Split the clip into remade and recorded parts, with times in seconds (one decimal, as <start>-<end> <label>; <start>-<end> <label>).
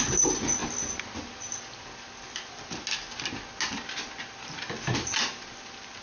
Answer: 0.0-6.0 recorded